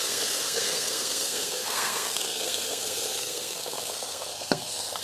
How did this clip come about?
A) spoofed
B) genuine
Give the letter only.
A